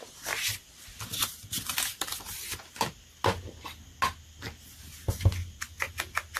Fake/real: real